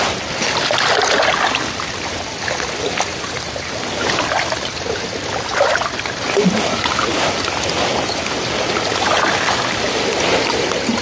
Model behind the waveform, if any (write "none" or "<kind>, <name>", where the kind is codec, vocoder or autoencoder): none